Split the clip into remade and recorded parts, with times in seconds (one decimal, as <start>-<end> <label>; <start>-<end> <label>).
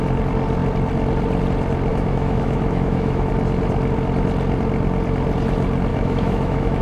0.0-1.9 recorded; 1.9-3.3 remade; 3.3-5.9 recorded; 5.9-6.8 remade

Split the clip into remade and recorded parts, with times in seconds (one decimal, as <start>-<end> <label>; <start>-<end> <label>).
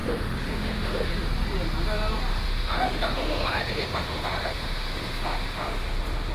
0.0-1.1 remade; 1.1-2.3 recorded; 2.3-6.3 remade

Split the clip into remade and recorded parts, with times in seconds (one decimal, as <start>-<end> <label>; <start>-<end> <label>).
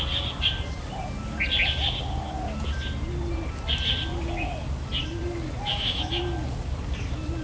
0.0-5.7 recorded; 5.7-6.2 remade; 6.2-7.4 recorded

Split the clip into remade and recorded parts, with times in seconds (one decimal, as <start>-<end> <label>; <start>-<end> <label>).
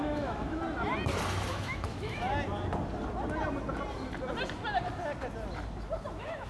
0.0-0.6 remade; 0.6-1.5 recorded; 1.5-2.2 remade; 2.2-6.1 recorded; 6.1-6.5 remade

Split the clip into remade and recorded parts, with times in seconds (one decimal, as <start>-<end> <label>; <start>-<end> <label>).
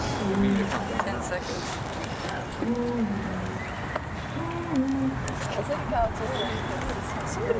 0.0-7.6 recorded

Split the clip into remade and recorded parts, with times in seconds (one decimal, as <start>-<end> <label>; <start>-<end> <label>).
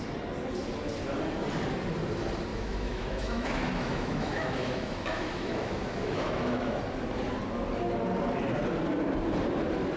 0.0-2.5 recorded; 2.5-6.8 remade; 6.8-10.0 recorded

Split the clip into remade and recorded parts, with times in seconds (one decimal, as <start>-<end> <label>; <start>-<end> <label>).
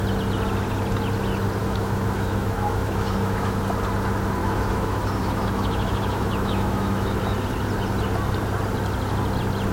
0.0-1.6 recorded; 1.6-3.6 remade; 3.6-4.4 recorded; 4.4-7.2 remade; 7.2-9.7 recorded